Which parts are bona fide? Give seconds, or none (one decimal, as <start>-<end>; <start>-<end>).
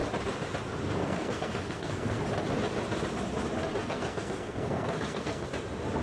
0.0-1.0; 2.2-3.8; 5.5-6.0